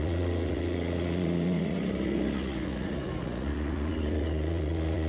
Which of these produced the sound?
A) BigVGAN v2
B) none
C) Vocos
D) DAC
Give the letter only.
C